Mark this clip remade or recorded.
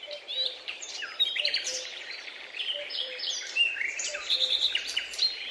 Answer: remade